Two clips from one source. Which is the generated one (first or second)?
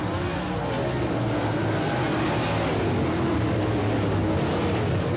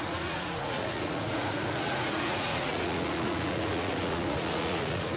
second